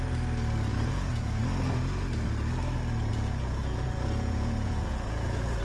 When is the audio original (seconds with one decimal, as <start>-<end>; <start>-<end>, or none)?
0.0-0.7; 1.4-3.1

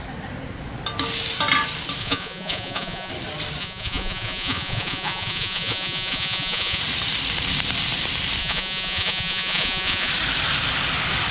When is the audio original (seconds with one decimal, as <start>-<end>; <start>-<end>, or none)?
0.0-2.0; 3.1-3.6; 6.8-8.4; 10.1-11.3

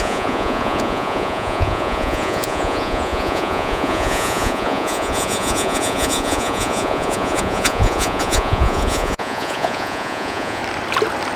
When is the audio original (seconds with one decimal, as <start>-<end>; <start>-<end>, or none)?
10.6-11.4

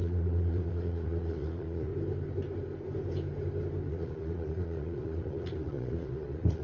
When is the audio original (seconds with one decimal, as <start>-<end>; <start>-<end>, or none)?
1.9-3.9

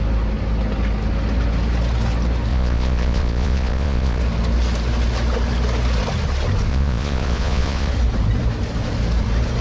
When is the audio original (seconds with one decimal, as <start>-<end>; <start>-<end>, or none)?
0.0-2.5; 4.2-6.7; 7.9-9.6

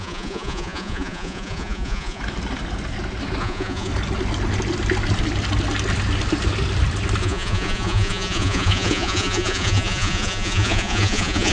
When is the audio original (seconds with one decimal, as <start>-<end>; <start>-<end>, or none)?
2.2-3.4; 3.9-7.2